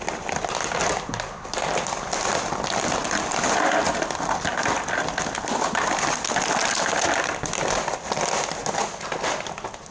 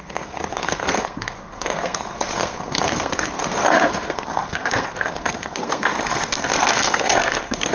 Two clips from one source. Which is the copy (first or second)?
second